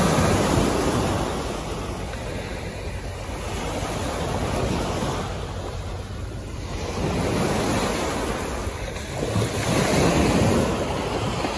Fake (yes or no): no